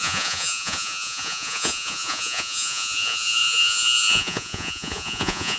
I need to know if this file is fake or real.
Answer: fake